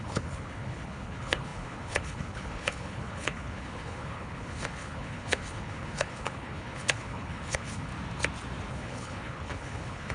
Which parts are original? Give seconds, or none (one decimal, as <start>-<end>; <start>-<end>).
7.9-8.7